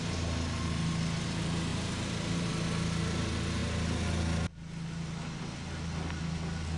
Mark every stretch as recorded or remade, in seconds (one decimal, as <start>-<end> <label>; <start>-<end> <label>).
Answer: 0.0-1.7 recorded; 1.7-2.5 remade; 2.5-6.8 recorded